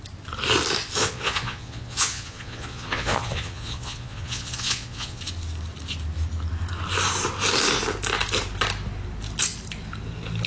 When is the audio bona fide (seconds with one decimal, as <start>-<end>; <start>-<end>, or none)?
0.0-1.0; 5.2-10.5